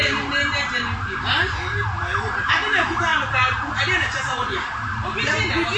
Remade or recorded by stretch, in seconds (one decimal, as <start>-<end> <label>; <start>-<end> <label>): 0.0-5.8 recorded